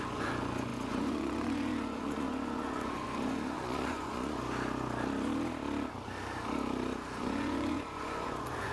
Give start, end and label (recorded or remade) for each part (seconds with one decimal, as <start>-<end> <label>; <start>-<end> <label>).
0.0-4.4 remade; 4.4-7.2 recorded; 7.2-8.7 remade